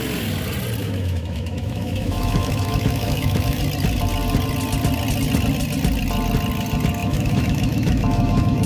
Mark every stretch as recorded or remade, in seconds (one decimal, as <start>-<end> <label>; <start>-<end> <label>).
0.0-0.8 recorded; 0.8-3.6 remade; 3.6-7.0 recorded; 7.0-8.7 remade